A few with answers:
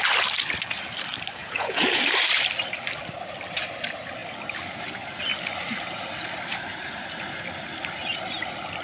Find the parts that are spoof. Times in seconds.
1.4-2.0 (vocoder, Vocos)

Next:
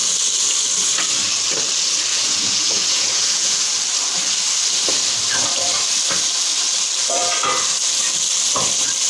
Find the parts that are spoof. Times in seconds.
2.1-3.7 (vocoder, Vocos)

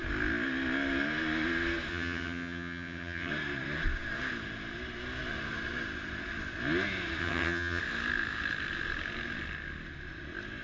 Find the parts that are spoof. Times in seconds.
1.9-3.3 (vocoder, HiFi-GAN); 7.2-7.8

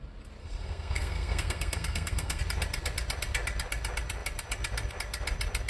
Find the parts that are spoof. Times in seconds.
0.4-2.4 (codec, SNAC)

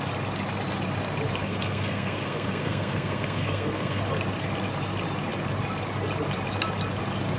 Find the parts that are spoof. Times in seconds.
1.4-4.0 (codec, SNAC)

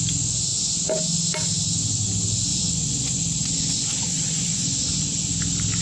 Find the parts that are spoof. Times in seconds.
2.5-5.3 (vocoder, Vocos)